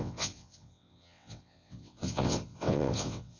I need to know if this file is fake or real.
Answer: fake